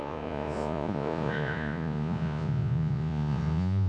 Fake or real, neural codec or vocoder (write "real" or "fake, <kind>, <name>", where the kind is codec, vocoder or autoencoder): fake, vocoder, Vocos